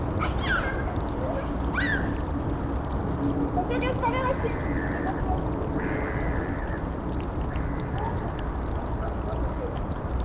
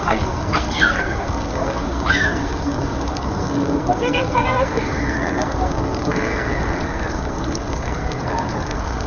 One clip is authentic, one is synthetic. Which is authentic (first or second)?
first